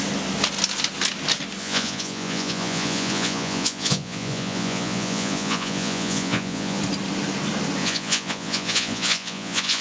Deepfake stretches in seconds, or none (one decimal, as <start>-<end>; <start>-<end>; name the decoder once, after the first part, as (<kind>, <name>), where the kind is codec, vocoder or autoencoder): 1.6-6.8 (vocoder, Vocos); 7.8-9.8